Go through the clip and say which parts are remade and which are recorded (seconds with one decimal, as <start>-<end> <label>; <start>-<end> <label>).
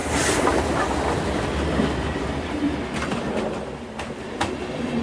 0.0-5.0 recorded